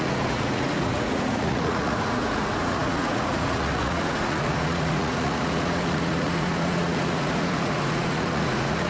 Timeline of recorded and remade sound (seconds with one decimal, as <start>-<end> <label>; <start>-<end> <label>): 0.0-8.9 remade